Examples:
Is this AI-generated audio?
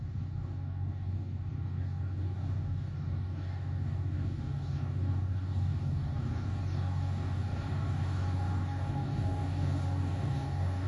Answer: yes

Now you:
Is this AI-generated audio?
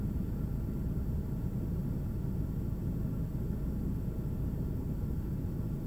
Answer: no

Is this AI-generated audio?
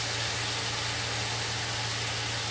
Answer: no